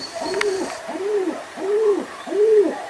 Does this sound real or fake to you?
fake